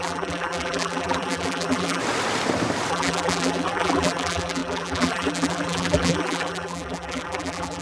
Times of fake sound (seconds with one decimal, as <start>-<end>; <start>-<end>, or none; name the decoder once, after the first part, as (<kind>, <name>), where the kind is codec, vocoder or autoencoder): 0.0-2.0 (vocoder, BigVGAN v2); 2.9-7.8